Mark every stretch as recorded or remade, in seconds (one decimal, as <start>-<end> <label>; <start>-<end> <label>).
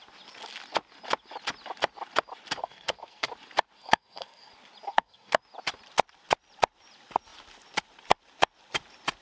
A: 0.0-2.6 recorded; 2.6-3.3 remade; 3.3-3.8 recorded; 3.8-4.5 remade; 4.5-4.9 recorded; 4.9-5.4 remade; 5.4-9.2 recorded